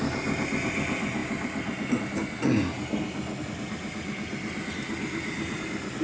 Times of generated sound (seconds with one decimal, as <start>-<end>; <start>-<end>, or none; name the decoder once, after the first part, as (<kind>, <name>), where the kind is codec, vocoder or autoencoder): none